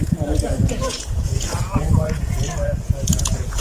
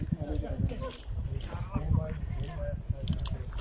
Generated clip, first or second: first